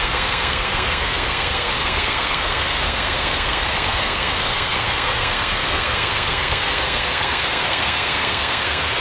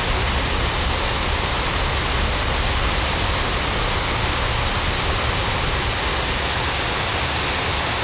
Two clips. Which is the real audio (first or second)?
second